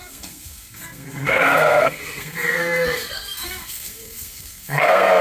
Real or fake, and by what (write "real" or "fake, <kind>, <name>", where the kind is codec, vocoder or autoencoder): fake, codec, SNAC